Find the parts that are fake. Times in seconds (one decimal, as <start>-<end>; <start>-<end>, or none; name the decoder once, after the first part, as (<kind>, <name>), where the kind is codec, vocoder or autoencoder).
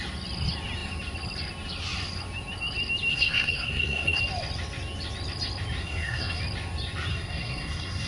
3.1-4.2 (codec, SNAC); 5.8-6.4; 7.1-8.1